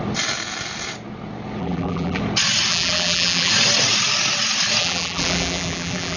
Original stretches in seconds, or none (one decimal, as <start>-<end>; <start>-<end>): 0.0-1.6; 2.2-2.7; 3.5-4.8